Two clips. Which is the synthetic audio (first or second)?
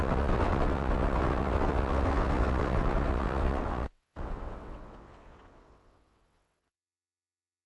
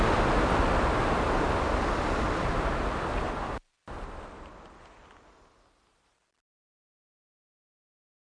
first